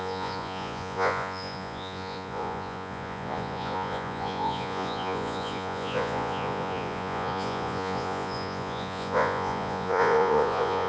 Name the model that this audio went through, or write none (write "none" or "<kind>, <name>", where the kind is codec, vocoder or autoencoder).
vocoder, Vocos